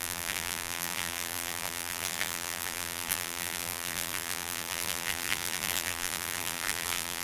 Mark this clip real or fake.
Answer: fake